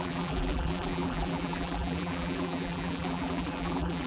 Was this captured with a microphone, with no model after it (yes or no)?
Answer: no